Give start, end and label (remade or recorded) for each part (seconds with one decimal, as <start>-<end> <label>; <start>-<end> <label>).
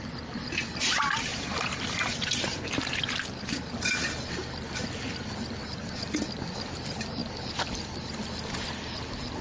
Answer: 0.0-1.3 recorded; 1.3-5.6 remade; 5.6-7.2 recorded; 7.2-9.4 remade